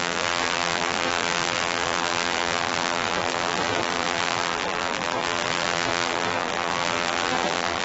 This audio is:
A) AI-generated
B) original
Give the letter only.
A